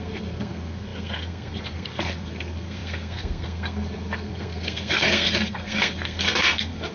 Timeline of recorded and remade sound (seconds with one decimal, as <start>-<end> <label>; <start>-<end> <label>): 0.0-6.9 remade